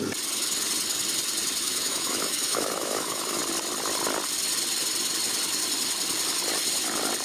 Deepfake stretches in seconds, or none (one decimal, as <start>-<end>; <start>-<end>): 1.6-3.4